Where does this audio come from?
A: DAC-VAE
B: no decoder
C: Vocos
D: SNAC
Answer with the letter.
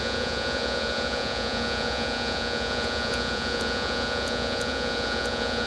C